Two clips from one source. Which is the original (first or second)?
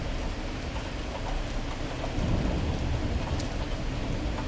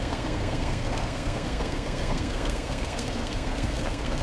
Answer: first